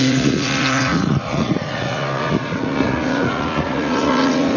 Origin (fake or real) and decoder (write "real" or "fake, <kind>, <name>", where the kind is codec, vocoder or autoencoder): fake, vocoder, Vocos